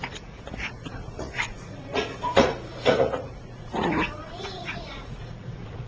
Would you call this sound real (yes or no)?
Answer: no